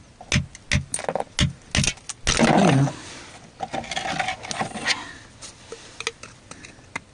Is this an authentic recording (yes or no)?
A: yes